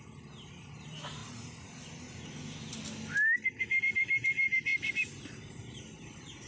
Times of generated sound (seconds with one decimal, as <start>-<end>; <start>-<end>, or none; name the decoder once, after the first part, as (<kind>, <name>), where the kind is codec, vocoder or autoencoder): 0.0-1.2 (vocoder, BigVGAN v2); 3.8-6.5

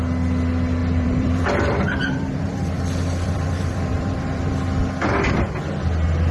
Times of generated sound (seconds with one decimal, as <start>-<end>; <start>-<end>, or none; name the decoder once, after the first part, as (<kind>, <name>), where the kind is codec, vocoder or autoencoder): 0.8-4.6 (vocoder, BigVGAN v2)

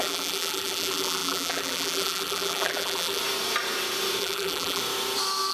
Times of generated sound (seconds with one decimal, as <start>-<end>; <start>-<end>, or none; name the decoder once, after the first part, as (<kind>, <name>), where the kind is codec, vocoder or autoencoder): 0.0-3.2 (vocoder, BigVGAN v2); 4.2-4.8